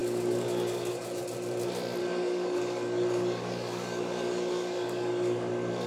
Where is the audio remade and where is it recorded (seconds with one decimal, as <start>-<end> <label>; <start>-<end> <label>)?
0.0-1.2 remade; 1.2-2.0 recorded; 2.0-5.5 remade; 5.5-5.9 recorded